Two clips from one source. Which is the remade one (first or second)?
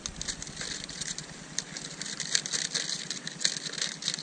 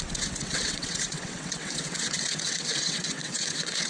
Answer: second